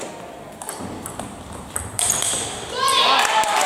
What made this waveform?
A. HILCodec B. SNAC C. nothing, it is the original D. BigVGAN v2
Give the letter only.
C